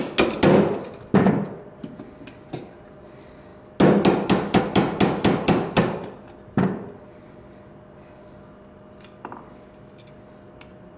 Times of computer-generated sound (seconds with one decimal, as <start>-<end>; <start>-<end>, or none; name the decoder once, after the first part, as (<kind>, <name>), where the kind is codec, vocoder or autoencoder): none